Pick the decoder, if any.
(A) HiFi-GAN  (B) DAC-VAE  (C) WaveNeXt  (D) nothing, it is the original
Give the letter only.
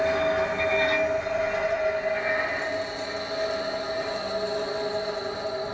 D